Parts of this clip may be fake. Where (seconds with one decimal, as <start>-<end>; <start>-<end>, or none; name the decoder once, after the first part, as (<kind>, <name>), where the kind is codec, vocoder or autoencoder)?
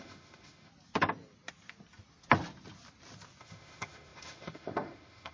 0.0-0.7 (autoencoder, DAC-VAE); 3.4-5.3